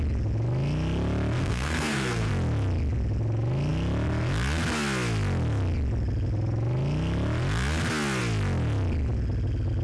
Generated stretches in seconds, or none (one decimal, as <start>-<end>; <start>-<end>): 1.4-2.3